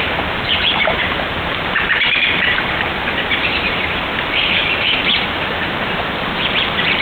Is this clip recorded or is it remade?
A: remade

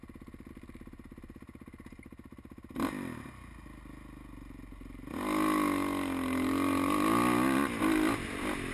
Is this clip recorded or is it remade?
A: recorded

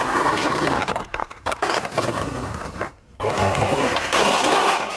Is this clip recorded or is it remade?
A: remade